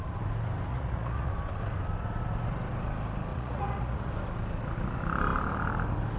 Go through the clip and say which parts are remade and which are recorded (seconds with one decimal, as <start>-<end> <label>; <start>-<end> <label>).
0.0-0.7 recorded; 0.7-1.3 remade; 1.3-3.3 recorded; 3.3-4.1 remade; 4.1-6.2 recorded